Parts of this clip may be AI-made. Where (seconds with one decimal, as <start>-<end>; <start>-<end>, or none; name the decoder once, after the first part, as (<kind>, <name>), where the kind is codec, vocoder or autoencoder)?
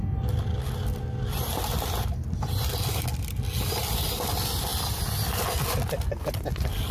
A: none